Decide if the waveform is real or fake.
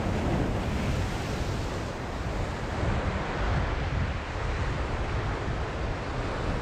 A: real